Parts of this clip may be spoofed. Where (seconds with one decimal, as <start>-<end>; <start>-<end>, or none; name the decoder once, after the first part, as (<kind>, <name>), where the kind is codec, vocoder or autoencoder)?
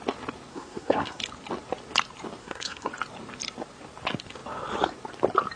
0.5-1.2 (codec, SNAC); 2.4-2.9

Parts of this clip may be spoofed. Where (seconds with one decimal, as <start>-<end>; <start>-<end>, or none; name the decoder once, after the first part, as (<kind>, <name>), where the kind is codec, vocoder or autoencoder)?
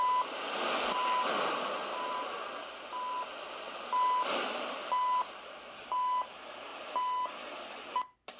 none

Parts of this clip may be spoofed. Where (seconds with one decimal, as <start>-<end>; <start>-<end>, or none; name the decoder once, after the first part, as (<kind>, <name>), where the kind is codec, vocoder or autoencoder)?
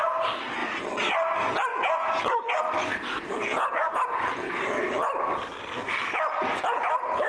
1.7-2.2 (vocoder, Vocos); 3.5-4.5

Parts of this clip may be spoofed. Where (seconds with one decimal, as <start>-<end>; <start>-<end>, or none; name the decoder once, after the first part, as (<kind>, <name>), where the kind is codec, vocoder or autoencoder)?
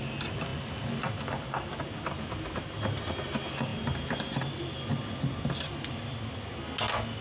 none